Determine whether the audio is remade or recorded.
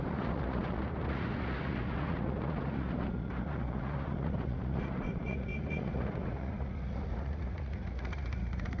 remade